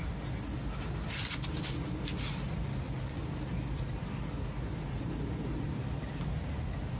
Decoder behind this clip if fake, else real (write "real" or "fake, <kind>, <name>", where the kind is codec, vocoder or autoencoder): real